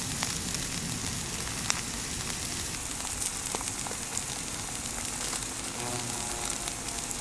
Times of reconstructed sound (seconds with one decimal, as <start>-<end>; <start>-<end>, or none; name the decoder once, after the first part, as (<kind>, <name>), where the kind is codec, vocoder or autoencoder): none